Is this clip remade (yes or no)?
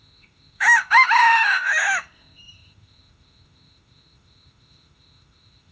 yes